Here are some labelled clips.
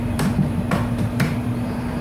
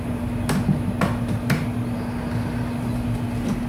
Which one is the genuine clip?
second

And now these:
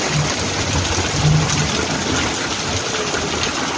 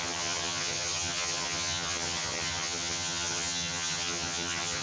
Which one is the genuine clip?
first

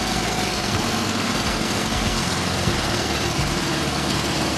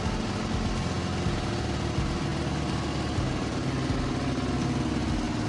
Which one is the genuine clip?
second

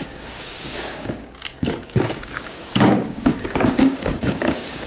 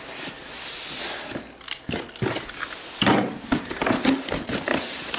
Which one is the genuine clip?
second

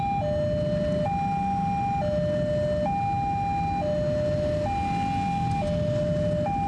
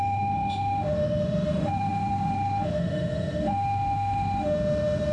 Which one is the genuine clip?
first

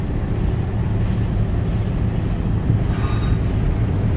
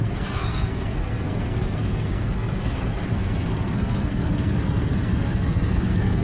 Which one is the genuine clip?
first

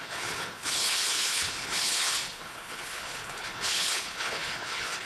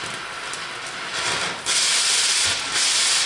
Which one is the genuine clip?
second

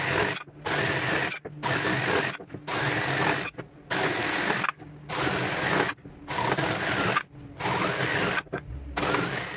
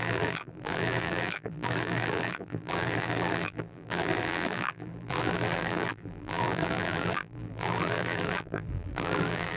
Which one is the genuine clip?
first